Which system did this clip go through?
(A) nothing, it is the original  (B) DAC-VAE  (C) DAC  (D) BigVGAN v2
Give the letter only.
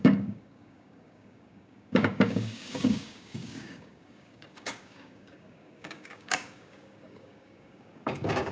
C